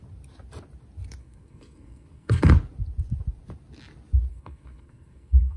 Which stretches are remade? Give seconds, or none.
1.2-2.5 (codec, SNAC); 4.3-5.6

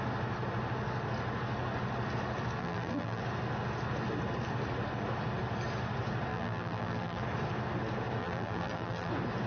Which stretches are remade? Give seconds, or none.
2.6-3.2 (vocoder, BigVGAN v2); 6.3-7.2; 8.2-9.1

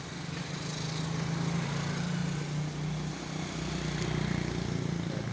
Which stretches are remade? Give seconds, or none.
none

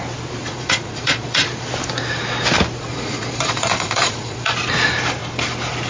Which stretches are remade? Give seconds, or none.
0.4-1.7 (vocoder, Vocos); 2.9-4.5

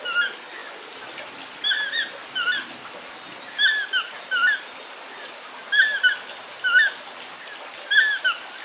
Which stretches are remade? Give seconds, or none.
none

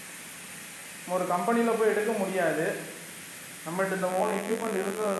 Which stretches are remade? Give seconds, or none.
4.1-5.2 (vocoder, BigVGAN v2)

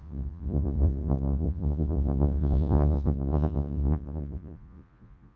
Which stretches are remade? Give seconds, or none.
0.0-5.4 (vocoder, Vocos)